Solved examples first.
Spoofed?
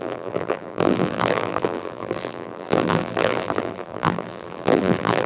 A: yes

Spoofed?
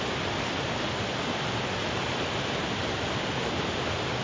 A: no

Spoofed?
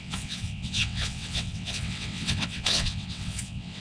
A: yes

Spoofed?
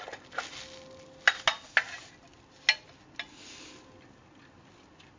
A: no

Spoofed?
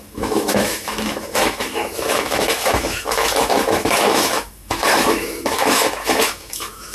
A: yes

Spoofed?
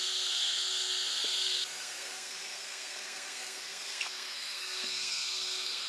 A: yes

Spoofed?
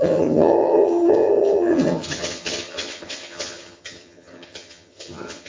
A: yes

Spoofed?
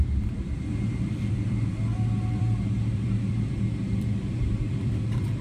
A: yes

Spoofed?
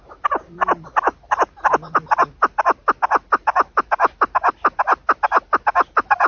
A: yes